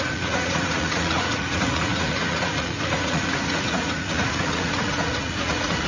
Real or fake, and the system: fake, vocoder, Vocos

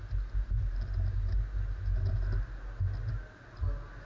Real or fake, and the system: real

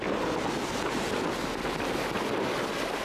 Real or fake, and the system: real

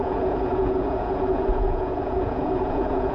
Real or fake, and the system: fake, vocoder, Vocos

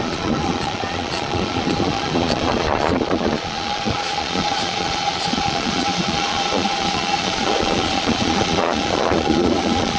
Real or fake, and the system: fake, vocoder, Vocos